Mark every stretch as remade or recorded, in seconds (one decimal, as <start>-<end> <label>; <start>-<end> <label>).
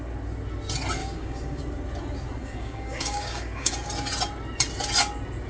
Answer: 0.0-1.0 recorded; 1.0-1.6 remade; 1.6-2.4 recorded; 2.4-3.7 remade; 3.7-5.5 recorded